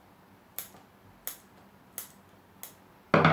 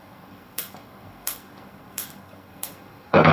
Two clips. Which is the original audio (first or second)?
first